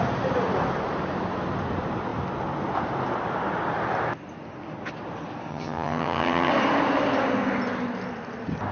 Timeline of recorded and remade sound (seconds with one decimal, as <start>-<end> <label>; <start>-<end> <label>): 0.0-5.5 recorded; 5.5-6.5 remade; 6.5-8.7 recorded